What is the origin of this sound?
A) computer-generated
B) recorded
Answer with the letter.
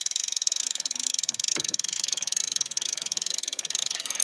A